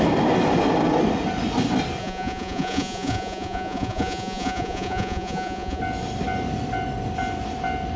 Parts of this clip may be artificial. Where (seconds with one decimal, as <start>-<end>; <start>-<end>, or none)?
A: 2.0-5.8